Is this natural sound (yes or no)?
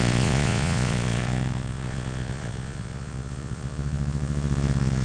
no